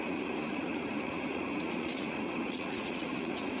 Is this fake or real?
fake